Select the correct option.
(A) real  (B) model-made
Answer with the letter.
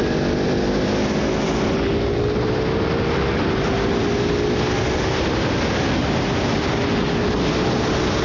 A